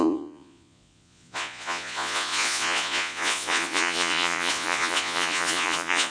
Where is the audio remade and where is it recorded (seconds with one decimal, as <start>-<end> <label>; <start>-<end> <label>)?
0.0-6.1 remade